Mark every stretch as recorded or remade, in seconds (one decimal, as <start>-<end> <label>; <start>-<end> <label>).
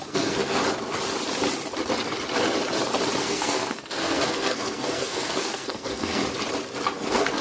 0.0-0.6 remade; 0.6-3.2 recorded; 3.2-6.2 remade; 6.2-7.0 recorded; 7.0-7.4 remade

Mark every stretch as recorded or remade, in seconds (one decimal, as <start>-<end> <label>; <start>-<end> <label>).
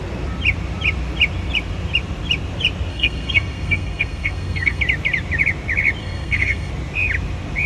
0.0-2.9 recorded; 2.9-4.8 remade; 4.8-6.0 recorded; 6.0-6.7 remade; 6.7-7.7 recorded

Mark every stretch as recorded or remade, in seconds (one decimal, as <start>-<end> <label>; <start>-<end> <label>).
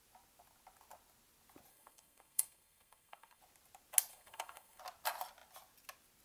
0.0-1.7 recorded; 1.7-3.4 remade; 3.4-4.1 recorded; 4.1-4.8 remade; 4.8-6.2 recorded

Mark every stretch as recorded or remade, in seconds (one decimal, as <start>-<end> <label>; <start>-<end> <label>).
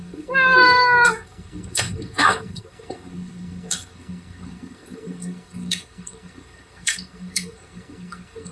0.0-8.5 remade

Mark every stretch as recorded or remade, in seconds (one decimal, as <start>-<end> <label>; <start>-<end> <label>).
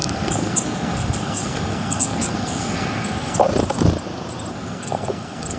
0.0-3.4 remade; 3.4-4.5 recorded; 4.5-5.6 remade